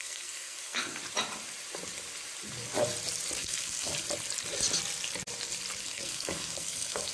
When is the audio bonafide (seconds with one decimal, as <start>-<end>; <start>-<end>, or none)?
1.0-3.4; 3.9-5.8